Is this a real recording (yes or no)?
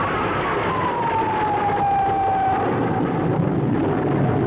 yes